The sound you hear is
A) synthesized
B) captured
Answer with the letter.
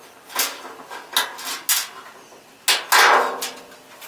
B